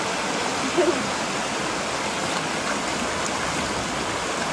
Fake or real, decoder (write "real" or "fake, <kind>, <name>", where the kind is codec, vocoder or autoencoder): real